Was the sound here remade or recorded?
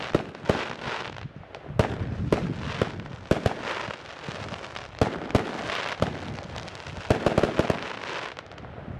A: recorded